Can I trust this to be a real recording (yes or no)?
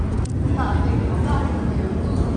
yes